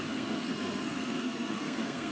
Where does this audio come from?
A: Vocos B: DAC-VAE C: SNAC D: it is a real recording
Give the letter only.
C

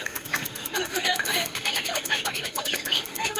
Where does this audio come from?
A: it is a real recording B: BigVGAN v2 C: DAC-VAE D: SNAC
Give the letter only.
C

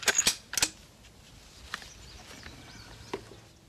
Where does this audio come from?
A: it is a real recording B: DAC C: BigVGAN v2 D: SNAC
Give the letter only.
A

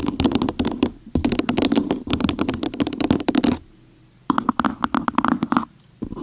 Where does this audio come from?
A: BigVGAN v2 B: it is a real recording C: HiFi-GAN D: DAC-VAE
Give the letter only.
B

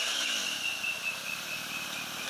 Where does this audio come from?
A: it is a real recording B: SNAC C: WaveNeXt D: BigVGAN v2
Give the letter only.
A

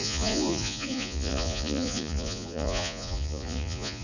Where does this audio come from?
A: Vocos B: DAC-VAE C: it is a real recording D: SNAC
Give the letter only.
A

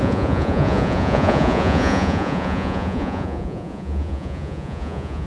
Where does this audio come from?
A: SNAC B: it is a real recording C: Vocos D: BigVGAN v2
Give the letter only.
C